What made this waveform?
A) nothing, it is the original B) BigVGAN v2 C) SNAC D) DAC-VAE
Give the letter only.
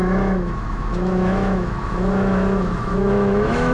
D